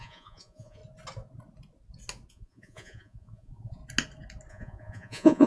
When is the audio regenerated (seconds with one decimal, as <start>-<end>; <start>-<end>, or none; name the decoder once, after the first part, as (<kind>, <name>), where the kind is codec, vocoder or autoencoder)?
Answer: 0.0-0.8 (vocoder, Vocos); 2.3-3.8; 4.5-5.5